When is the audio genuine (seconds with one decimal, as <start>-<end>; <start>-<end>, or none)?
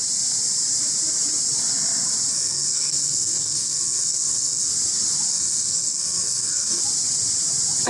0.0-2.3; 4.7-5.3; 6.8-7.9